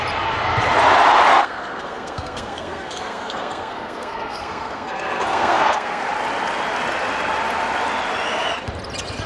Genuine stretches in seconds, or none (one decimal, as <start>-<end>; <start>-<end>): 0.0-1.3; 6.0-9.3